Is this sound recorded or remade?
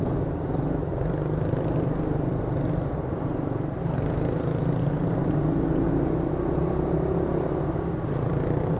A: recorded